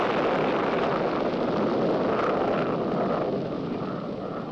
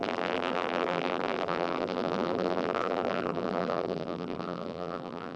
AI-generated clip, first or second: second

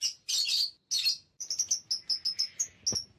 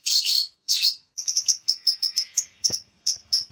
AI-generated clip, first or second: second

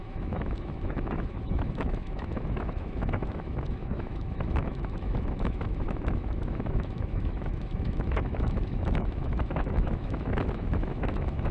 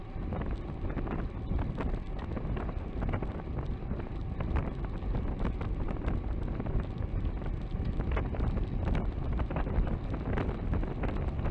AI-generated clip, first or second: first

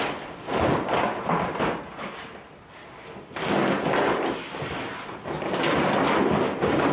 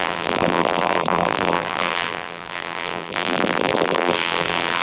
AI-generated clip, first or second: second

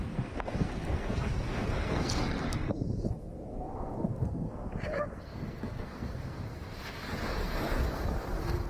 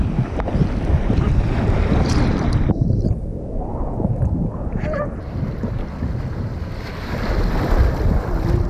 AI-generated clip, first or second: first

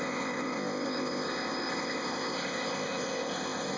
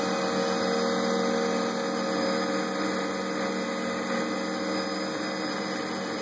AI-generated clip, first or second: first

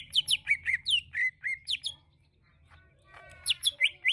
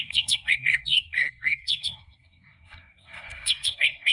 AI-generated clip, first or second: second